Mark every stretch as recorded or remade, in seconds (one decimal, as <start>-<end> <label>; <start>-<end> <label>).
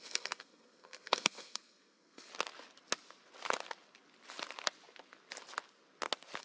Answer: 0.0-2.3 remade; 2.3-6.4 recorded